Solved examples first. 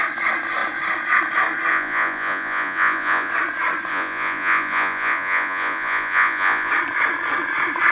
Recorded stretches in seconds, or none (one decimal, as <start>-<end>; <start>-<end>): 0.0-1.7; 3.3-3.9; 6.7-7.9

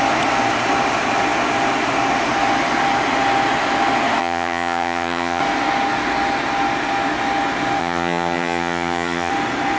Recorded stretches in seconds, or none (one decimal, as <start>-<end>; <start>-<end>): 0.0-4.2; 5.4-7.8; 9.3-9.8

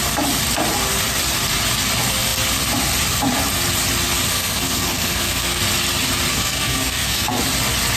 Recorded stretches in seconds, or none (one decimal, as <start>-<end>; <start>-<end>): 0.0-4.3; 5.6-6.3; 7.4-8.0